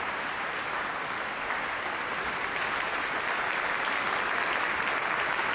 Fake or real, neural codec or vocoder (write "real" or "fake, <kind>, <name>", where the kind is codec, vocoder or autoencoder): real